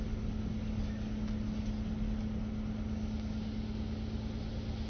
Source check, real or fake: real